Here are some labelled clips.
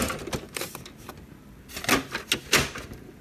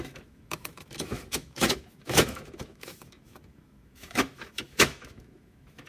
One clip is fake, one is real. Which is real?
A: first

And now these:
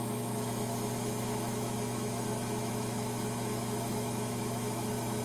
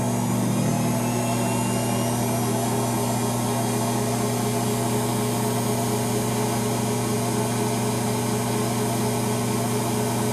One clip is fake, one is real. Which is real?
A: second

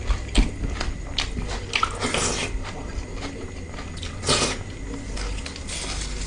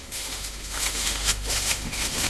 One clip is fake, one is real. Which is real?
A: first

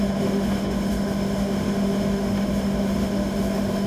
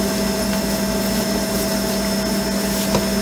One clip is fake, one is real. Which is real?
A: second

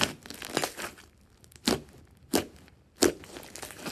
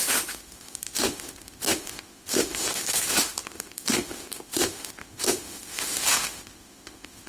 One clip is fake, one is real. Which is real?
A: first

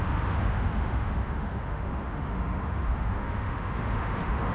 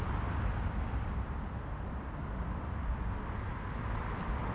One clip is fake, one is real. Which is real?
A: second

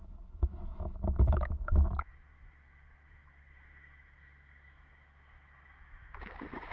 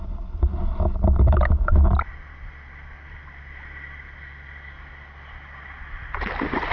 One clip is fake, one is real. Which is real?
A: second